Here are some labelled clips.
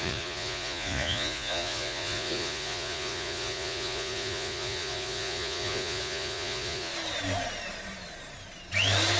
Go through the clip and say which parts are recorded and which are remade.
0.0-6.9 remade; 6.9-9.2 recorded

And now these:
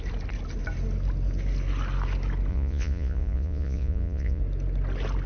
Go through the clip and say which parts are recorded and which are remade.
0.0-2.5 recorded; 2.5-4.4 remade; 4.4-5.3 recorded

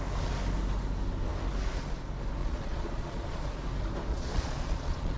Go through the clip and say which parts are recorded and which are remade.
0.0-2.4 recorded; 2.4-3.5 remade; 3.5-4.1 recorded; 4.1-5.2 remade